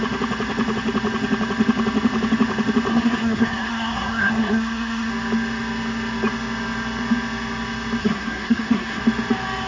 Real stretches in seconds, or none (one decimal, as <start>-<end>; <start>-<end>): 0.0-2.9; 5.1-8.0; 9.0-9.7